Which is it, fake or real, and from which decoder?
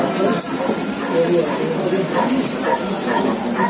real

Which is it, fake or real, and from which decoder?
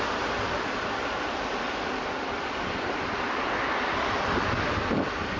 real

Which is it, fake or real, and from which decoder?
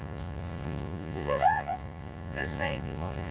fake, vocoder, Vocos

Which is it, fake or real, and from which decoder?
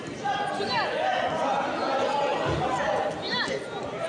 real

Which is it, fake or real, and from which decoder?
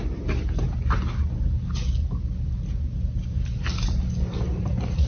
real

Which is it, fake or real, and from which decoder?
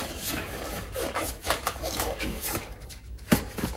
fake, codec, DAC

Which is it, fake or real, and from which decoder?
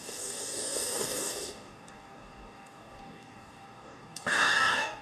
fake, codec, DAC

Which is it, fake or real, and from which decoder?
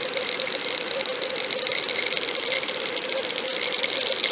fake, vocoder, BigVGAN v2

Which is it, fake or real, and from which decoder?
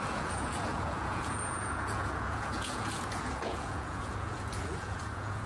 fake, vocoder, Vocos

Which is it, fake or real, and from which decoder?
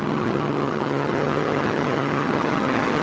fake, vocoder, HiFi-GAN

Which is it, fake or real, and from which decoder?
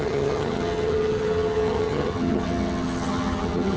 fake, vocoder, HiFi-GAN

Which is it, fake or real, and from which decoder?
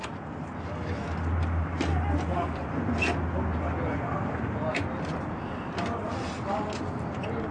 real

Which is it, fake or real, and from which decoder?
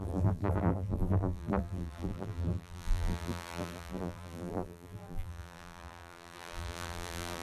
fake, vocoder, BigVGAN v2